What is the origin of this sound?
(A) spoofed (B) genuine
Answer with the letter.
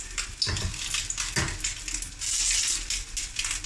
B